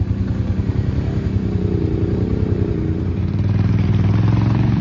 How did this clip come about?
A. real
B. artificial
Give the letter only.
B